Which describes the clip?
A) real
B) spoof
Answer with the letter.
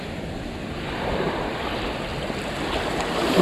A